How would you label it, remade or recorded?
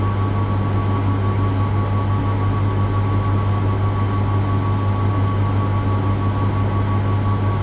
recorded